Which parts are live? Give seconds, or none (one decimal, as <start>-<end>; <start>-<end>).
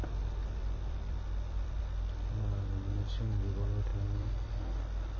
0.0-0.6; 1.8-3.9; 4.6-5.2